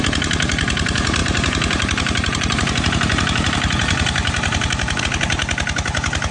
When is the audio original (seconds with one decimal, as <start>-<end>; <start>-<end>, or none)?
0.0-1.2; 5.0-6.3